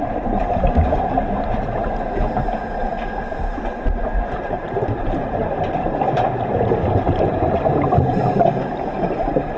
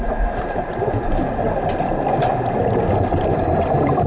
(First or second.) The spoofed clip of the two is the first